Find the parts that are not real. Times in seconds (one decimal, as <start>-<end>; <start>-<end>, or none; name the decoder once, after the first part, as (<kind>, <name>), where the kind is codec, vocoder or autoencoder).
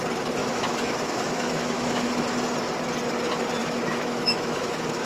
0.4-2.1 (autoencoder, DAC-VAE); 3.6-5.1